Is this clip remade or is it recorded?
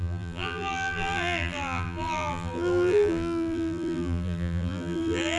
remade